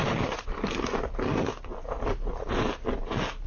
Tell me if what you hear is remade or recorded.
recorded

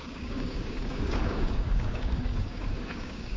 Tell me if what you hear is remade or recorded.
remade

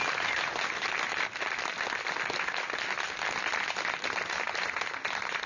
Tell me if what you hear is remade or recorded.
recorded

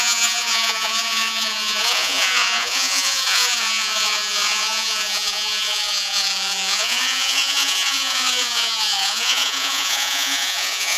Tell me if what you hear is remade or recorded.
remade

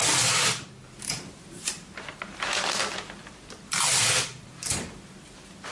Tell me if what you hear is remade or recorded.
remade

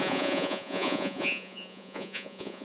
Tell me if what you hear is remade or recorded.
remade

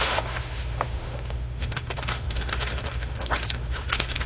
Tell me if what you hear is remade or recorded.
remade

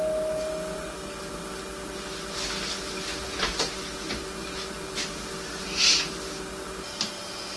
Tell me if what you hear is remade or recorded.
recorded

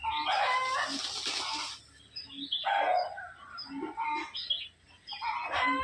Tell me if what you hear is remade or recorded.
recorded